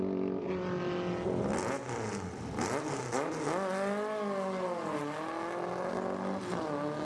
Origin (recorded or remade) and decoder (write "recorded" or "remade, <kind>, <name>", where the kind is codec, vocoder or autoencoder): recorded